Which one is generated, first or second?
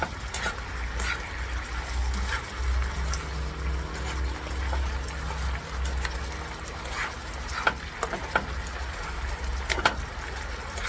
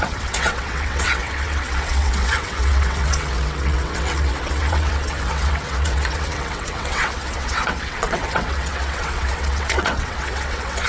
second